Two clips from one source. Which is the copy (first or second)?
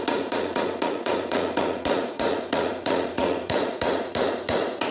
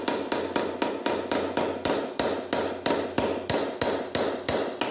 first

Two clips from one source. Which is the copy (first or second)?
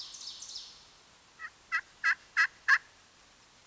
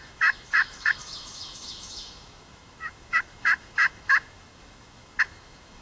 second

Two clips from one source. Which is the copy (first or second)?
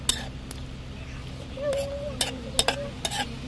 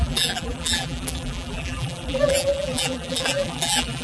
second